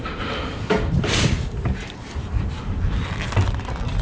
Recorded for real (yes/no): yes